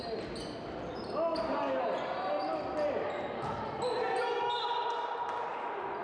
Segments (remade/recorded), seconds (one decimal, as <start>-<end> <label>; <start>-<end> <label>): 0.0-6.0 recorded